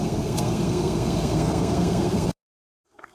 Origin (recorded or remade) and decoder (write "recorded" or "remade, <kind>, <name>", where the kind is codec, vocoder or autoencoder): remade, codec, SNAC